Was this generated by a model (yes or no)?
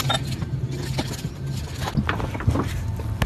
no